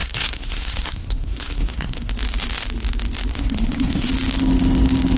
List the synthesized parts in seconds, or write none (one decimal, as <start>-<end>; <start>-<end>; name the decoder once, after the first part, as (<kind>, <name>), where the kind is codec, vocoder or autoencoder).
0.0-2.1 (codec, SNAC); 3.3-4.1